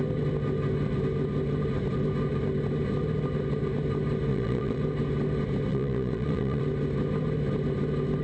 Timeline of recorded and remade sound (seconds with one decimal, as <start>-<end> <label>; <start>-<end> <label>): 0.0-4.3 recorded; 4.3-4.8 remade; 4.8-5.7 recorded; 5.7-6.6 remade; 6.6-8.2 recorded